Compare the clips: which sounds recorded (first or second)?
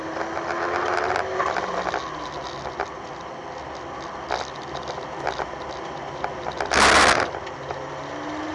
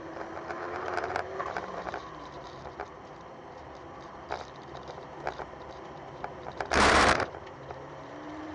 first